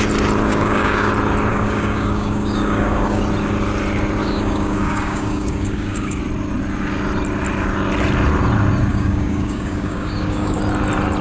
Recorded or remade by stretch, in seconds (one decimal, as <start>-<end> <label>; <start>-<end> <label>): 0.0-0.5 recorded; 0.5-1.1 remade; 1.1-1.5 recorded; 1.5-3.2 remade; 3.2-4.2 recorded; 4.2-6.2 remade; 6.2-8.9 recorded; 8.9-10.6 remade; 10.6-11.2 recorded